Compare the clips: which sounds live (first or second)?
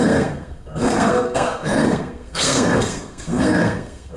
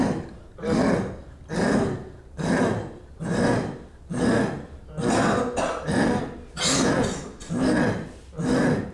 second